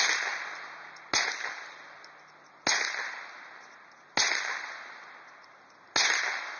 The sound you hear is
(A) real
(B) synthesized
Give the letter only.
A